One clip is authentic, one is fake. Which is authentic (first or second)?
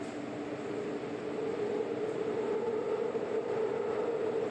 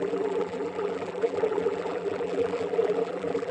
first